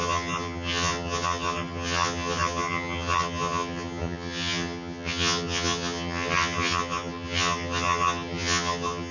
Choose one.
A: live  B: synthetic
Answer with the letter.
B